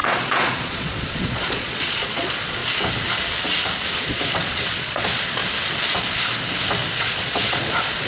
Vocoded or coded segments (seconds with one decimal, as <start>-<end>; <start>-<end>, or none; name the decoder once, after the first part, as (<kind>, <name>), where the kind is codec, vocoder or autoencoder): 0.0-2.6 (vocoder, Vocos); 4.0-5.4; 7.0-8.1